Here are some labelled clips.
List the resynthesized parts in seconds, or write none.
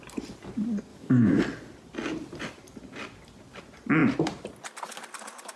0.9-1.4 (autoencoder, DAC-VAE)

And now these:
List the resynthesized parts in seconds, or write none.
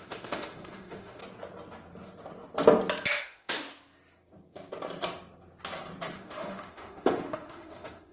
0.0-1.2 (autoencoder, DAC-VAE); 3.2-3.6; 6.1-8.1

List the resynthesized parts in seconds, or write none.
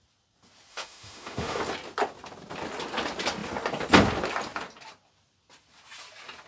0.7-1.6 (autoencoder, DAC-VAE)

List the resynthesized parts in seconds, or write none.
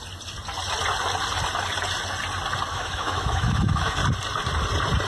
2.7-4.0 (autoencoder, DAC-VAE)